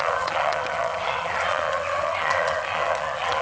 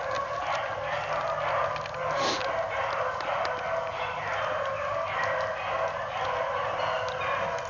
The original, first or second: second